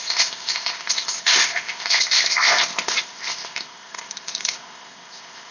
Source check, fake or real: fake